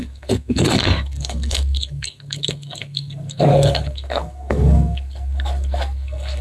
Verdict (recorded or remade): remade